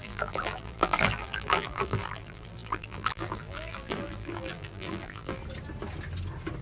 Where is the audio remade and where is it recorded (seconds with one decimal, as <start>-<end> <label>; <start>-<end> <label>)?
0.0-5.4 remade; 5.4-6.6 recorded